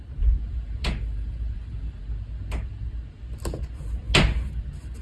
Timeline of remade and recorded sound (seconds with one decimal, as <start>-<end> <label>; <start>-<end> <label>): 0.0-0.5 recorded; 0.5-2.0 remade; 2.0-5.0 recorded